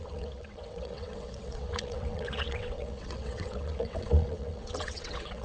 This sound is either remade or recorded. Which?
remade